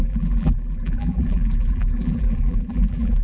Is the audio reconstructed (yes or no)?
yes